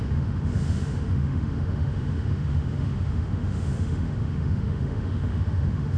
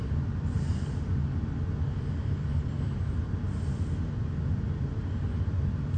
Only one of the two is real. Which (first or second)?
second